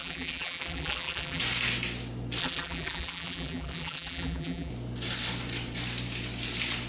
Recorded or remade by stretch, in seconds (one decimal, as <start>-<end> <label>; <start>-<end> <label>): 0.0-1.4 remade; 1.4-2.4 recorded; 2.4-4.7 remade; 4.7-6.9 recorded